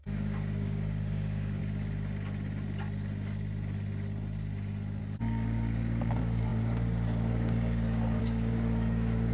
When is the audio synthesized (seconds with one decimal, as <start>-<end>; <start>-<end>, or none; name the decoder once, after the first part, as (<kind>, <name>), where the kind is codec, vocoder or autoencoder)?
0.0-1.6 (codec, DAC); 5.0-9.3